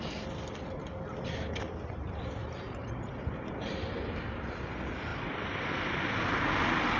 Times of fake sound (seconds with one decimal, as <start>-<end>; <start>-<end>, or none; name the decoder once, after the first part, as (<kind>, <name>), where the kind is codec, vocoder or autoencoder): 2.8-3.9 (vocoder, BigVGAN v2)